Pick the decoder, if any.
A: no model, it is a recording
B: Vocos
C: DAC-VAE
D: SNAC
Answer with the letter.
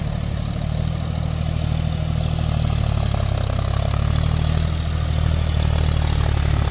A